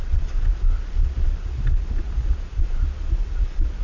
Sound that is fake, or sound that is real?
fake